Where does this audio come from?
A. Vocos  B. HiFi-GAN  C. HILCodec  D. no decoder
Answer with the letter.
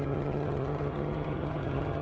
B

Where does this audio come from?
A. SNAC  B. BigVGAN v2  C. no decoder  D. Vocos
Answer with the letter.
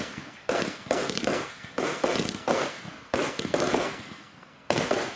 A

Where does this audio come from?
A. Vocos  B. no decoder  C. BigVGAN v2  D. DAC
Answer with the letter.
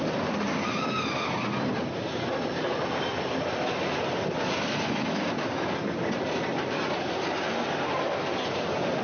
B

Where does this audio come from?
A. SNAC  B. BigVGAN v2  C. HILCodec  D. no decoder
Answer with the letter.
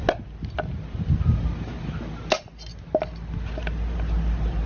D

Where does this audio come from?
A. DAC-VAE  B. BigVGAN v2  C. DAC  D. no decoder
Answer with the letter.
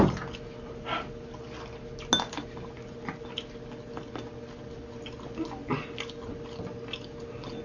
D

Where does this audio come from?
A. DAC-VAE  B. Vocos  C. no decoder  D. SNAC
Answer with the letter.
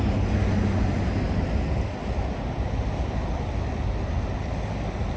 C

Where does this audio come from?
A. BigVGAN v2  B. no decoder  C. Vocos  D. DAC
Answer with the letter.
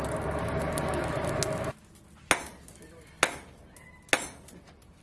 B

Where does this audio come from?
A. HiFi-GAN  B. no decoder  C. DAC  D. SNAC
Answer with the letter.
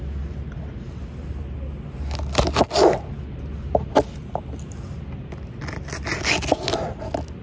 B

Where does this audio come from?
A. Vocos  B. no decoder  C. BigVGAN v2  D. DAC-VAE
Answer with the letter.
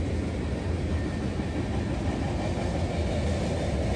B